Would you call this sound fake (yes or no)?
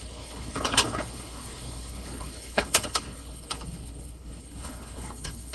yes